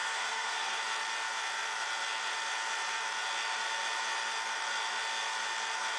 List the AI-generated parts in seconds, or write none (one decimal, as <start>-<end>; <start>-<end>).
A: 0.0-0.8